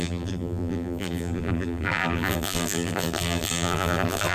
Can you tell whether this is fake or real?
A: fake